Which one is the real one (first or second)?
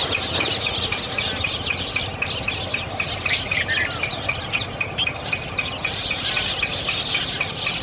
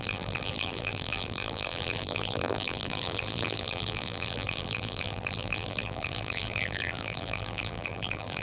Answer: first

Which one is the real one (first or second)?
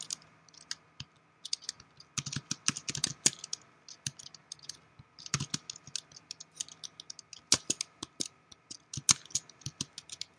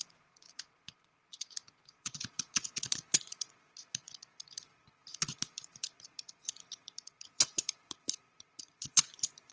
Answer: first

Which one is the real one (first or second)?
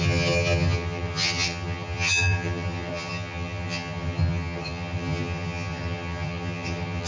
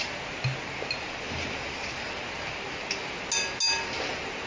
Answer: second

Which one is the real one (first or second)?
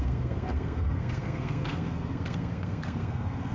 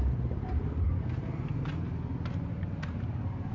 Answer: second